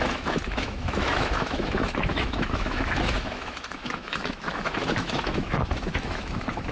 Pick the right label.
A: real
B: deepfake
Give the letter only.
B